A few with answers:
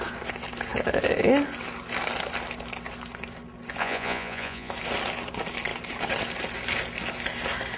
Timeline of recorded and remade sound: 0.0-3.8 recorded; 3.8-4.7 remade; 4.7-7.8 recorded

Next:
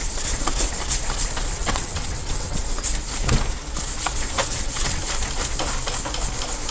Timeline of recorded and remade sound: 0.0-1.6 recorded; 1.6-2.6 remade; 2.6-4.4 recorded; 4.4-5.0 remade; 5.0-6.7 recorded